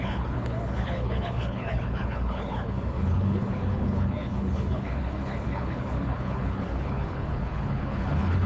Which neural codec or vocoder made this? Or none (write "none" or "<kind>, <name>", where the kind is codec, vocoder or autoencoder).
codec, HILCodec